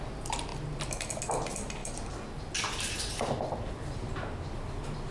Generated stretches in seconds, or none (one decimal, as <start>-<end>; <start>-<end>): none